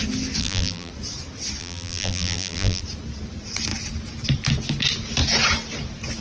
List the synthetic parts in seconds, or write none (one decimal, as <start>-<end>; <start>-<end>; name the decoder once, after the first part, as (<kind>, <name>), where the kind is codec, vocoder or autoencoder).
0.4-0.9 (vocoder, BigVGAN v2); 1.6-2.8